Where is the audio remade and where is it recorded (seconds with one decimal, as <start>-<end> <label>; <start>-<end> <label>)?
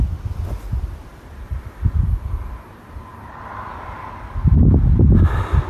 0.0-5.7 recorded